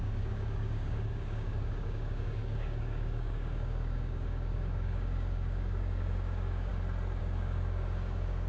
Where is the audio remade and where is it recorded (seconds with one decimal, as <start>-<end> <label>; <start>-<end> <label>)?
0.0-6.7 remade; 6.7-7.2 recorded; 7.2-8.5 remade